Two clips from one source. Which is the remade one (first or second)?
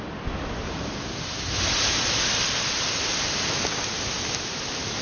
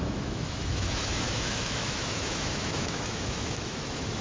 second